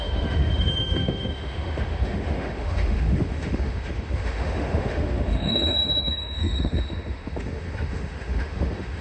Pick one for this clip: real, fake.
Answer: fake